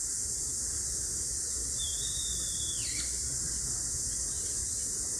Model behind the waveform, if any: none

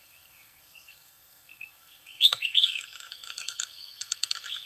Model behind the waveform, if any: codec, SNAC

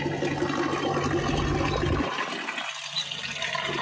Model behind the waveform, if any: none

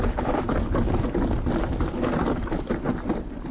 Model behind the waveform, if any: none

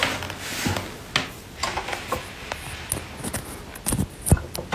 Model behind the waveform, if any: none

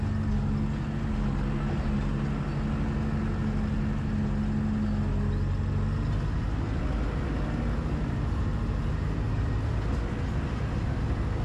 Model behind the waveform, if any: none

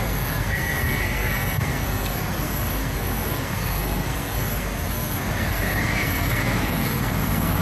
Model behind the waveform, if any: codec, SNAC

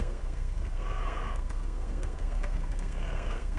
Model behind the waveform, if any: codec, SNAC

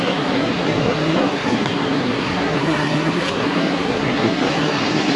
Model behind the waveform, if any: codec, SNAC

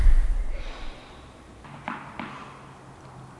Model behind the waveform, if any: none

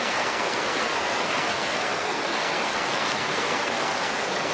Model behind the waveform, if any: codec, SNAC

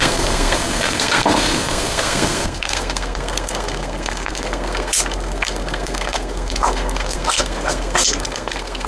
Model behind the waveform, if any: codec, SNAC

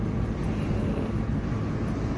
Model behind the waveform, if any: none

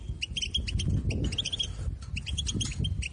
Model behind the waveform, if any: none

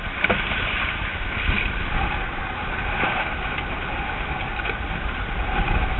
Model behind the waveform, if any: none